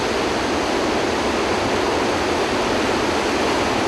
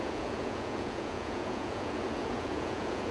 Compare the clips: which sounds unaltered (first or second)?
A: first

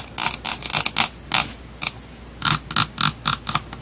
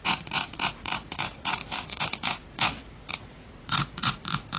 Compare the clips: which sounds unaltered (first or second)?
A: first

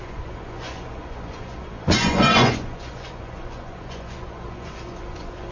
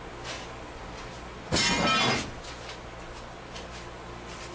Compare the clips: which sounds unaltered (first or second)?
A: second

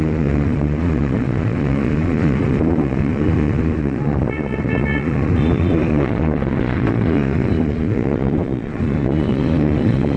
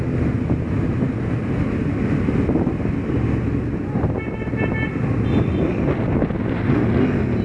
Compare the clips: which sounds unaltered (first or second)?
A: second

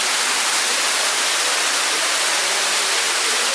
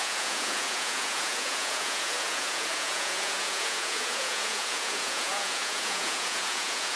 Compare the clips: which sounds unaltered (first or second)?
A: first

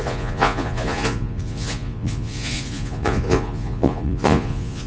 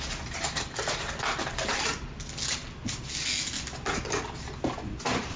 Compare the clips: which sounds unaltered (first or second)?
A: second